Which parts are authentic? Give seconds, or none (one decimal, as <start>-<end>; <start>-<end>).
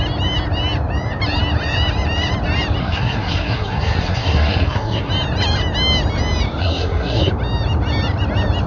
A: 0.0-2.8; 5.1-6.6; 7.3-8.7